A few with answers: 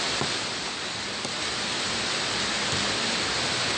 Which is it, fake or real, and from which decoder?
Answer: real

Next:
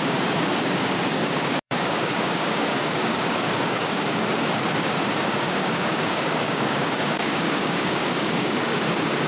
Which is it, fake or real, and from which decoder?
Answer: fake, codec, DAC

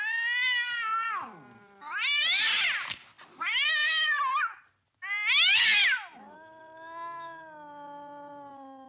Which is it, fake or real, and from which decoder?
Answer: real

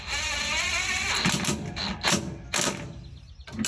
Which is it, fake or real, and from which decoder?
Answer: real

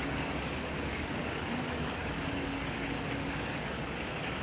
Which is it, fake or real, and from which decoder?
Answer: fake, codec, DAC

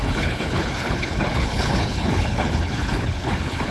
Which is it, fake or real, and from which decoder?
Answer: fake, codec, HILCodec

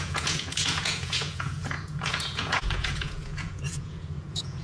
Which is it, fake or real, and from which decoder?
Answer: fake, vocoder, Vocos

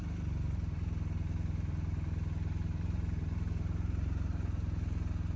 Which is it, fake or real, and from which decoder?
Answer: real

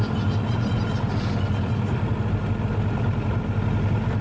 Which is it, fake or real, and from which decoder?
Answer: real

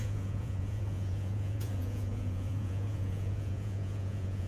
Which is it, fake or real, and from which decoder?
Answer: fake, vocoder, Vocos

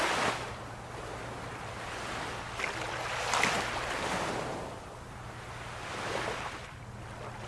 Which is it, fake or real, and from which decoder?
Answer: real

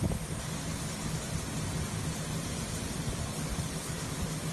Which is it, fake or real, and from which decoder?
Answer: real